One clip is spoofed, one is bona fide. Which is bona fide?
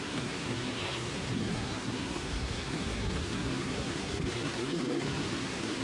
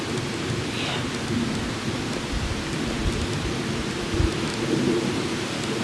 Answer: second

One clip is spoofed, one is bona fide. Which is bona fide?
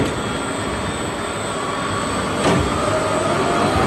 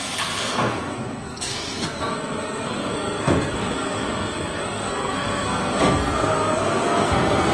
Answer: first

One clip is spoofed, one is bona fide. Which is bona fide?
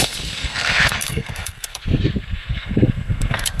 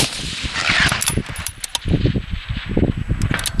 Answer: second